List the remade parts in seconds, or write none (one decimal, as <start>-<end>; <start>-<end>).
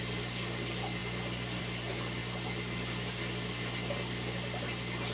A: none